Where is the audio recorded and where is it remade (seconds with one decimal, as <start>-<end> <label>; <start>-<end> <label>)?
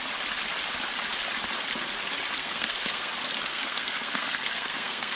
0.0-2.4 recorded; 2.4-3.1 remade; 3.1-3.5 recorded; 3.5-5.2 remade